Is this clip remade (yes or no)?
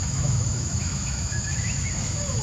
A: yes